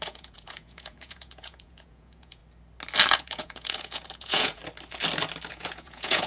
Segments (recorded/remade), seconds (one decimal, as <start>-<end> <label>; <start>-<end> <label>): 0.0-2.4 remade; 2.4-3.1 recorded; 3.1-4.6 remade; 4.6-5.5 recorded; 5.5-6.3 remade